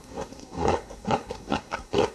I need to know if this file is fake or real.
fake